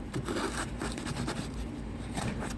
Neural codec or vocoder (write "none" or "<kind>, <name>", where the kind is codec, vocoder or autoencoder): vocoder, BigVGAN v2